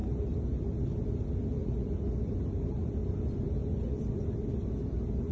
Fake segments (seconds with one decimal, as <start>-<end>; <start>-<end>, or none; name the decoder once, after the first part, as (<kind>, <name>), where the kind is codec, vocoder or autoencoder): none